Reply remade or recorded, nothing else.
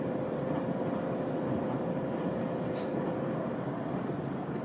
remade